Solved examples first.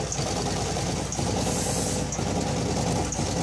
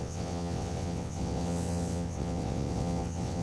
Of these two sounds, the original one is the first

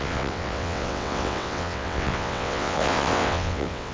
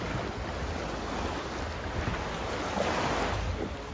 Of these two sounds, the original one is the second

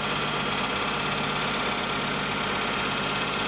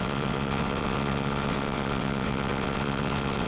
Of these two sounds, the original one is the first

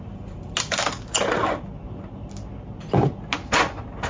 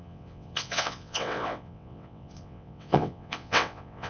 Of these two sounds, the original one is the first